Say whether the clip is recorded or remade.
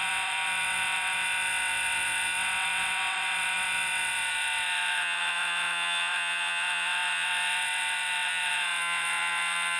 remade